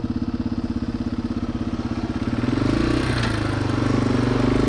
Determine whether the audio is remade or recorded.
recorded